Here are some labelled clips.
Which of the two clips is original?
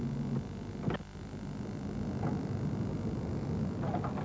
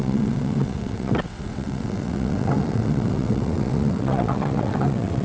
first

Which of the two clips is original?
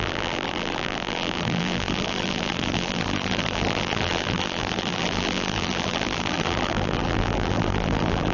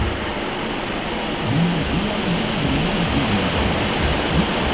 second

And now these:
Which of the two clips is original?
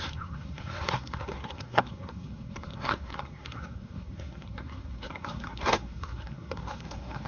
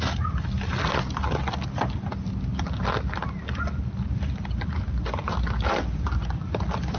second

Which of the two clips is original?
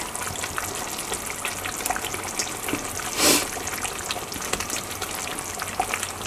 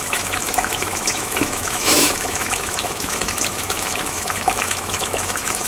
first